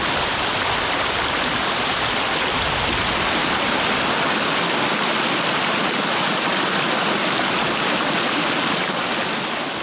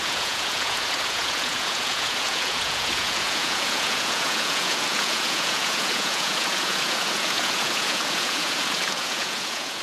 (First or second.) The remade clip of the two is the second